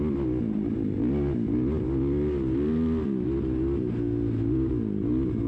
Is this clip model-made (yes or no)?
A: no